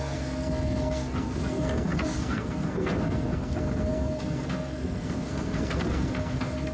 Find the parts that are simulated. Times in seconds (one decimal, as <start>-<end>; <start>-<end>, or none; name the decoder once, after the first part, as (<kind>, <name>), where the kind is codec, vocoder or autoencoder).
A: 0.0-6.7 (codec, SNAC)